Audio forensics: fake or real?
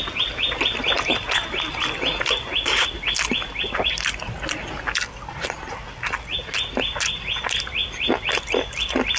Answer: real